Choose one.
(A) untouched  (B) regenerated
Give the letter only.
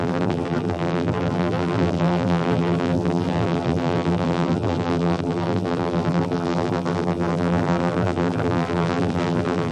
B